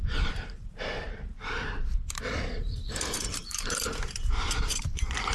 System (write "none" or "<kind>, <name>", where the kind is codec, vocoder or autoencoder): vocoder, BigVGAN v2